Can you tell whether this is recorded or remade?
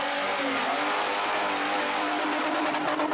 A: recorded